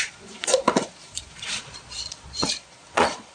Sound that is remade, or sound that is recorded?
remade